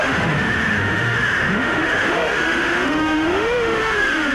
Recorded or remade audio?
remade